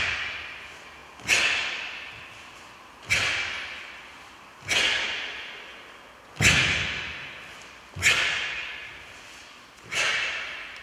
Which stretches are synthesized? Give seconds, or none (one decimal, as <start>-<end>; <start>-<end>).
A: none